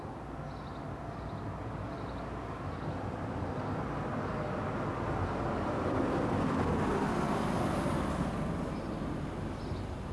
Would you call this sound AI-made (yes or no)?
no